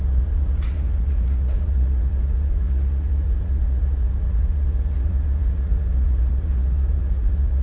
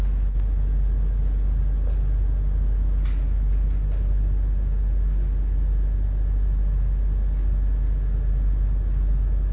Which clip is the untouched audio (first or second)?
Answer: second